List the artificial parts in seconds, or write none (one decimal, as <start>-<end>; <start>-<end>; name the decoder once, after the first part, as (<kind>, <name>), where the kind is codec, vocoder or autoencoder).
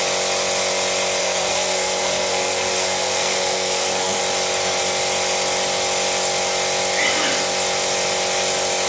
1.2-4.2 (codec, SNAC)